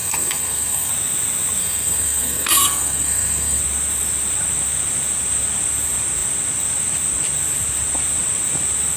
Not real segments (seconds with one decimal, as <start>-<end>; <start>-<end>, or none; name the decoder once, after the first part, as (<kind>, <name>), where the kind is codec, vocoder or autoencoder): 0.0-0.9 (codec, SNAC); 1.6-3.6